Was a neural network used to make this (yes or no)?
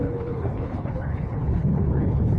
yes